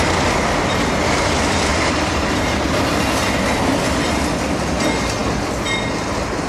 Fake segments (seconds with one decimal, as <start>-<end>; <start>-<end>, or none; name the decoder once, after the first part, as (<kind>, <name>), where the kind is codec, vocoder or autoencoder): 1.7-4.3 (vocoder, BigVGAN v2)